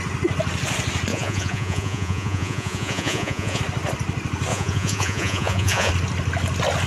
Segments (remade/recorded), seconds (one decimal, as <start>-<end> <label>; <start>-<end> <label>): 0.0-1.1 recorded; 1.1-3.6 remade; 3.6-4.5 recorded; 4.5-5.9 remade; 5.9-6.9 recorded